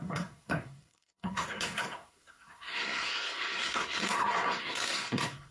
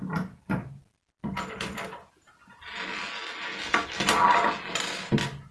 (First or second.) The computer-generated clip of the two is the first